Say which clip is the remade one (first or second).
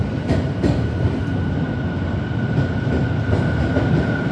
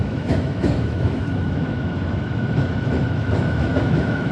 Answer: second